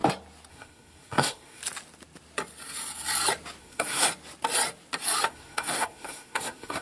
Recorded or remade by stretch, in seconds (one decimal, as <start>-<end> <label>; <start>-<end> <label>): 0.0-0.5 recorded; 0.5-1.6 remade; 1.6-3.6 recorded; 3.6-4.1 remade; 4.1-5.3 recorded; 5.3-6.8 remade